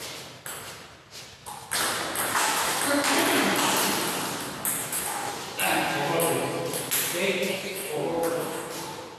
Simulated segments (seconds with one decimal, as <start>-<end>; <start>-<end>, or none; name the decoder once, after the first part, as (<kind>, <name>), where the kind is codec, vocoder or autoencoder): 2.3-2.8 (codec, DAC); 4.8-5.3; 7.5-8.7